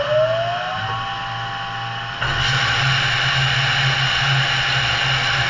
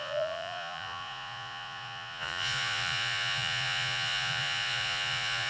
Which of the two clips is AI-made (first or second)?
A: second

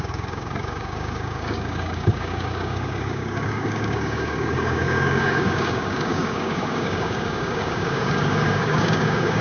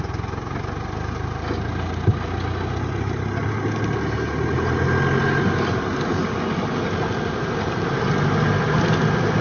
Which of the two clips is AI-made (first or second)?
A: first